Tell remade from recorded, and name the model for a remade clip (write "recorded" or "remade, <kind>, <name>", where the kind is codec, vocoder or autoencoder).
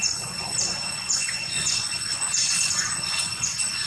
remade, vocoder, Vocos